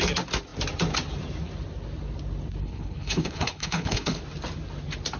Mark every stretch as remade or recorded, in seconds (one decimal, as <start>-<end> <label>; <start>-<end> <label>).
0.0-2.6 recorded; 2.6-4.2 remade; 4.2-5.2 recorded